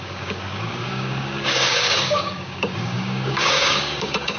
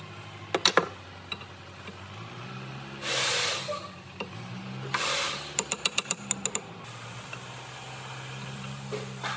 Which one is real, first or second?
second